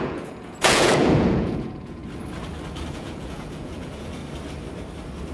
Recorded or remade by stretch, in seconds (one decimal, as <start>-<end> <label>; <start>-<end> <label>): 0.0-2.0 remade; 2.0-2.9 recorded; 2.9-4.2 remade; 4.2-5.3 recorded